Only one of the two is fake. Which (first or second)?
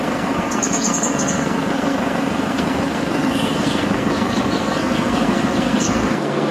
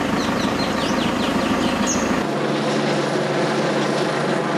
first